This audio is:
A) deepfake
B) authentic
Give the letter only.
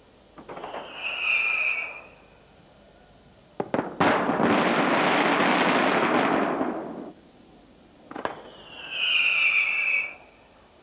B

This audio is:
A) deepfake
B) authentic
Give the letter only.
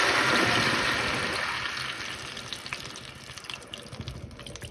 B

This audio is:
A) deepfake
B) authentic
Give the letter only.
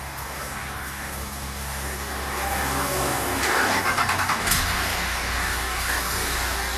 A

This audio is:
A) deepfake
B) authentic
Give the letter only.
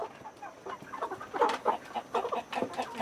B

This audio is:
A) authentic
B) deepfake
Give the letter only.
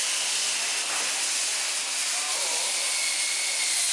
A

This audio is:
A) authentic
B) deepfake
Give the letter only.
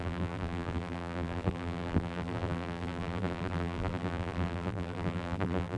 B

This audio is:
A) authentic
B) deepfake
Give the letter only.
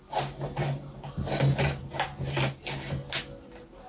A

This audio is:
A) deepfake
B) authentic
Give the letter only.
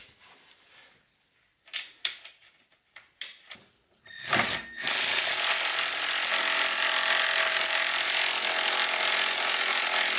B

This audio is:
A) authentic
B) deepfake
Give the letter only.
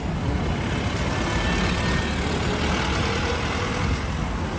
A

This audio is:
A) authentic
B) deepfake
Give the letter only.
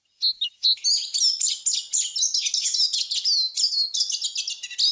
A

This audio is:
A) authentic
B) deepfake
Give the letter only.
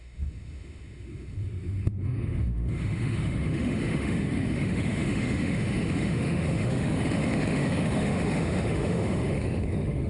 B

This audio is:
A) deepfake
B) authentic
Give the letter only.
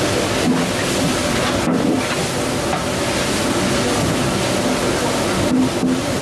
B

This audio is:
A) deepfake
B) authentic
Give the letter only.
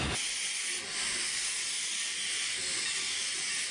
B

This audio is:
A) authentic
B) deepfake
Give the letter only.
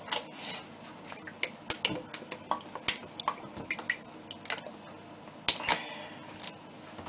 A